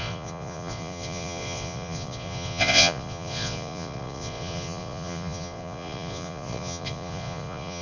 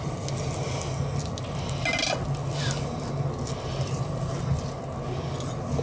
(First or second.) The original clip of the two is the second